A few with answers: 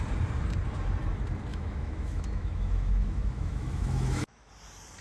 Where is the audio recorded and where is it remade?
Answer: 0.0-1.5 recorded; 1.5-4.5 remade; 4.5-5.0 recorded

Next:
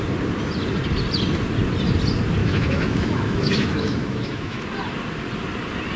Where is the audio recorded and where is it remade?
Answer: 0.0-2.4 recorded; 2.4-4.6 remade; 4.6-6.0 recorded

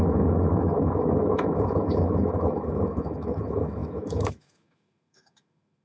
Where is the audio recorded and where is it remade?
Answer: 0.0-5.8 remade

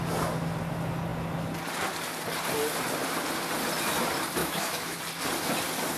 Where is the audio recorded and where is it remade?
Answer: 0.0-4.4 recorded; 4.4-5.0 remade; 5.0-6.0 recorded

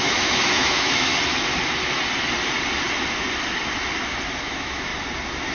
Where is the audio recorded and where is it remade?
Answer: 0.0-1.1 remade; 1.1-4.4 recorded; 4.4-4.9 remade; 4.9-5.5 recorded